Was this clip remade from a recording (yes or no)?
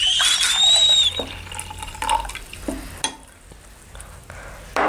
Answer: no